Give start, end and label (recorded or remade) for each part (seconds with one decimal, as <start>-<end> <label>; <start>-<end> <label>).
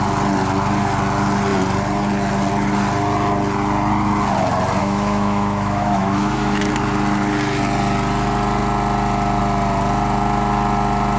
0.0-4.8 recorded; 4.8-6.7 remade; 6.7-11.2 recorded